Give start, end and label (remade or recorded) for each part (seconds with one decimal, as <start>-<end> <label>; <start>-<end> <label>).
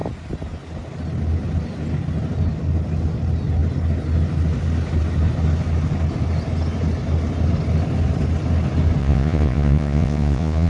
0.0-9.0 recorded; 9.0-10.7 remade